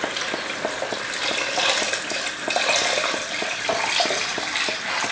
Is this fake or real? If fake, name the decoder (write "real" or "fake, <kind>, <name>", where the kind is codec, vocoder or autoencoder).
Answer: real